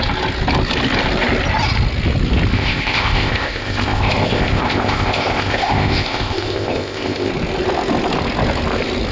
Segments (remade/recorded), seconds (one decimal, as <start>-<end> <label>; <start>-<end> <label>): 0.0-2.5 recorded; 2.5-7.3 remade; 7.3-9.1 recorded